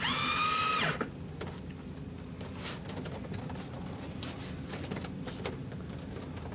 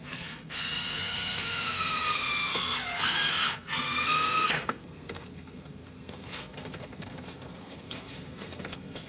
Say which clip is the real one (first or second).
first